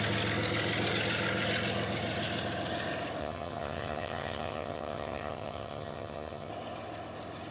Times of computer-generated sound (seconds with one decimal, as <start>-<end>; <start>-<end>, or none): 3.2-6.5